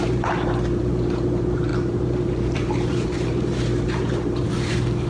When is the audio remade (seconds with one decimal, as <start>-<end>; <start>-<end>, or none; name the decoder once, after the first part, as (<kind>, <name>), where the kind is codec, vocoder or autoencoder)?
0.0-5.1 (vocoder, BigVGAN v2)